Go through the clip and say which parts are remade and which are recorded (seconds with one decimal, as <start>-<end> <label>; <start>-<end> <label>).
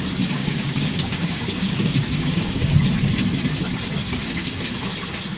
0.0-0.4 recorded; 0.4-2.7 remade; 2.7-4.0 recorded; 4.0-4.6 remade; 4.6-5.4 recorded